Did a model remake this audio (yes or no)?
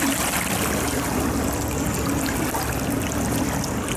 no